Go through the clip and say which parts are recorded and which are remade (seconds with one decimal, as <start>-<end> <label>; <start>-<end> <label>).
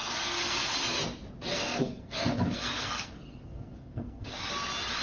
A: 0.0-0.7 remade; 0.7-1.5 recorded; 1.5-4.5 remade; 4.5-5.0 recorded